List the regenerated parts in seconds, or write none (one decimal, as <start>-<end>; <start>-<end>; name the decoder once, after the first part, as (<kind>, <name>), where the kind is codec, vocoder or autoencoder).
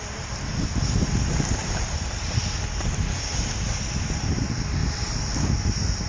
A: 1.6-2.4 (vocoder, BigVGAN v2); 4.8-5.5